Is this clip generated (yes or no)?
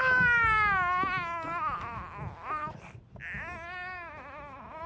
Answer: no